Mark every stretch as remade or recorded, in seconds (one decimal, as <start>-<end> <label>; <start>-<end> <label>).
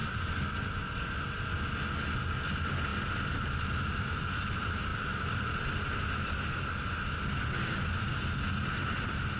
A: 0.0-9.4 recorded